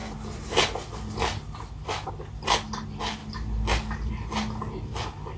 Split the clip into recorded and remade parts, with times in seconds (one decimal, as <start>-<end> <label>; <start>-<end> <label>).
0.0-5.4 recorded